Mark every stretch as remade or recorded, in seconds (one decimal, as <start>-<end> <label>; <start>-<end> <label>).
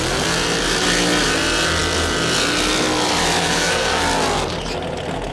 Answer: 0.0-3.4 recorded; 3.4-4.0 remade; 4.0-5.3 recorded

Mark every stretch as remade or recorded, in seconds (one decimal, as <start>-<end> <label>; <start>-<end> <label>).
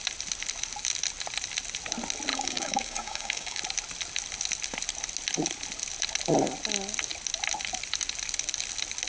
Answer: 0.0-2.3 recorded; 2.3-3.6 remade; 3.6-9.1 recorded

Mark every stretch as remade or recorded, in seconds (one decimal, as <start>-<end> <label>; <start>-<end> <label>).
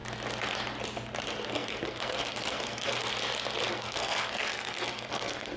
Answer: 0.0-1.2 recorded; 1.2-3.1 remade; 3.1-3.7 recorded; 3.7-5.6 remade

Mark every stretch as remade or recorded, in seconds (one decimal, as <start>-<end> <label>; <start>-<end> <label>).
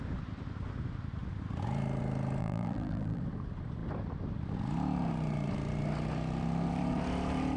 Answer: 0.0-2.4 recorded; 2.4-3.2 remade; 3.2-7.6 recorded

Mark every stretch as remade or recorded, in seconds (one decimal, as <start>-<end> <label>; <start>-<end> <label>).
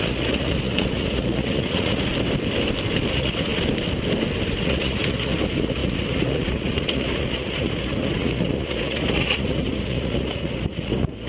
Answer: 0.0-2.1 remade; 2.1-3.1 recorded; 3.1-3.5 remade; 3.5-4.6 recorded; 4.6-11.3 remade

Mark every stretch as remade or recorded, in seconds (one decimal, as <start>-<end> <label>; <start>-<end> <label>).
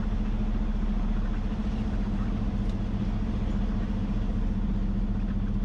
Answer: 0.0-5.6 recorded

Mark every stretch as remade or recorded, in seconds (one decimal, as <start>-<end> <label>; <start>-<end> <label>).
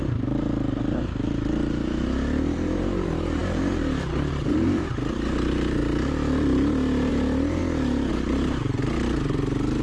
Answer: 0.0-5.8 remade; 5.8-7.1 recorded; 7.1-7.6 remade; 7.6-8.1 recorded; 8.1-9.8 remade